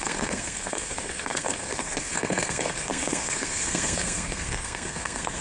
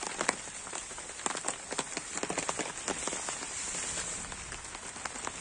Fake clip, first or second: first